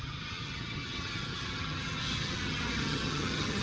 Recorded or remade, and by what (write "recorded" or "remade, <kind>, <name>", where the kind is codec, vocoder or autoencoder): remade, vocoder, HiFi-GAN